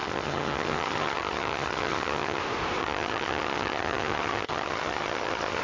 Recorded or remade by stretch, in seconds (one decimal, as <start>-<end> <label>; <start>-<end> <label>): 0.0-2.4 remade; 2.4-2.8 recorded; 2.8-5.6 remade

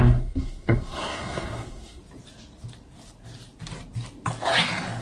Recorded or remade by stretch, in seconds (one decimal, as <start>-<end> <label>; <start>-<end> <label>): 0.0-2.0 remade; 2.0-5.0 recorded